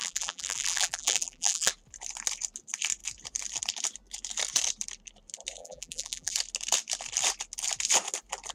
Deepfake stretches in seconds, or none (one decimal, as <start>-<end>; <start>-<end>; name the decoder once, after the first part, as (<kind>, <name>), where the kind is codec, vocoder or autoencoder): 0.0-1.7 (vocoder, BigVGAN v2); 5.6-6.3